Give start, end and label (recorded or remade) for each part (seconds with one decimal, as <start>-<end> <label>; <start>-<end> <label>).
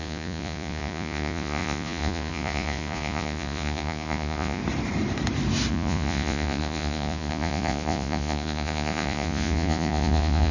0.0-4.6 remade; 4.6-5.7 recorded; 5.7-10.5 remade